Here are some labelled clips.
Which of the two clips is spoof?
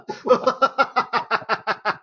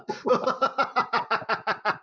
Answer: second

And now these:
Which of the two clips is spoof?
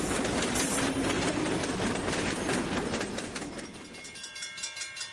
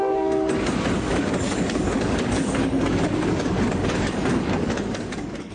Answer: second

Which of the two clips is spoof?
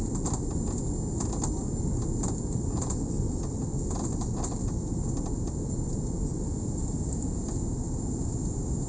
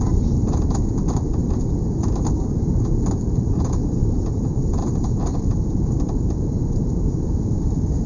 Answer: second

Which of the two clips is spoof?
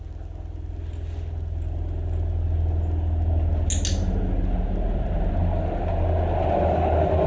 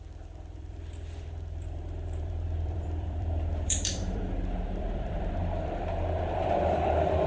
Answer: second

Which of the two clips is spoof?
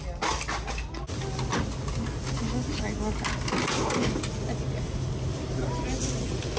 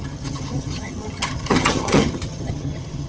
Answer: second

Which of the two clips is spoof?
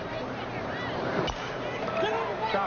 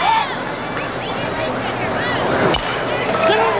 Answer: first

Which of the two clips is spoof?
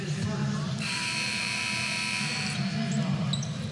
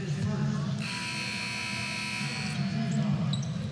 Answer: first